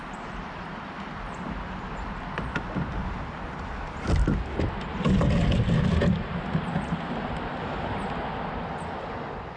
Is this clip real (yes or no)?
yes